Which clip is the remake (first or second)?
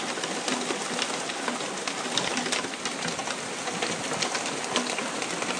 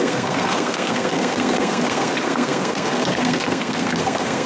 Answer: second